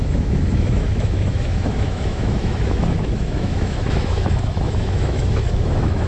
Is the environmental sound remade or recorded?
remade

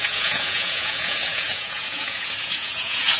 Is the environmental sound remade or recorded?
remade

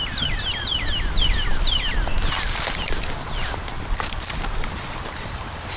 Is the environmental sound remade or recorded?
recorded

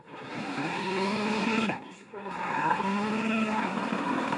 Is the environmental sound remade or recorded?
remade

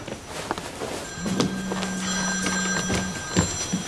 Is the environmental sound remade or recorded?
recorded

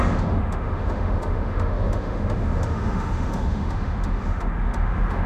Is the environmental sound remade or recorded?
remade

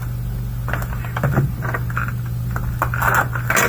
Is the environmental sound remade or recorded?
recorded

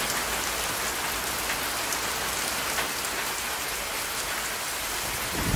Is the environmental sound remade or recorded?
recorded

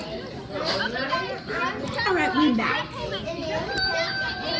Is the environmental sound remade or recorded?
recorded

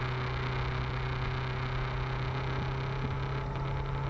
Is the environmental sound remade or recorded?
recorded